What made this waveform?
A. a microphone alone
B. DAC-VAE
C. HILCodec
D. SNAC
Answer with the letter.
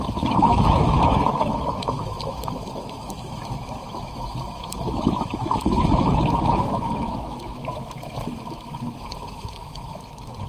B